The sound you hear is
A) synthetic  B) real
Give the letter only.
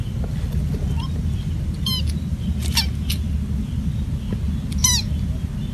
B